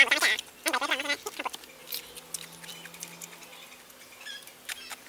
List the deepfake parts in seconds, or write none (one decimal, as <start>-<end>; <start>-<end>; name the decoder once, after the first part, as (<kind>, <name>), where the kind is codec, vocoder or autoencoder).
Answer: none